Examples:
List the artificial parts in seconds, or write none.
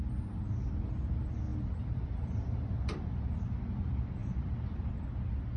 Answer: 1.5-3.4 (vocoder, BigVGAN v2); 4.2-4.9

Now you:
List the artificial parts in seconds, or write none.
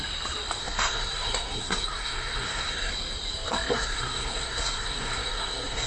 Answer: 0.6-2.9 (codec, SNAC); 3.7-5.9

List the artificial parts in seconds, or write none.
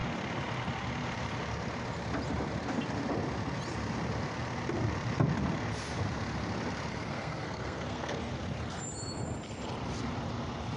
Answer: 6.9-8.3 (codec, SNAC)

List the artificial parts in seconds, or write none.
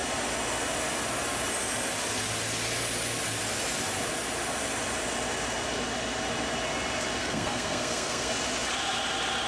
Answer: 7.2-8.3 (codec, SNAC)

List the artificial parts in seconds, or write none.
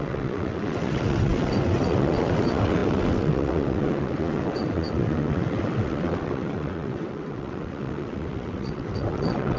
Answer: 0.0-9.6 (vocoder, WaveNeXt)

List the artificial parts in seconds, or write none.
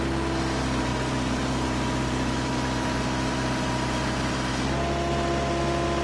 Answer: 0.9-4.5 (vocoder, BigVGAN v2)